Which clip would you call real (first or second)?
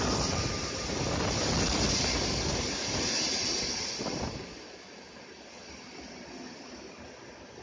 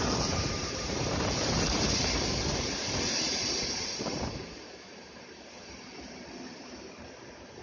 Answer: first